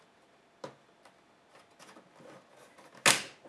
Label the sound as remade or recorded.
recorded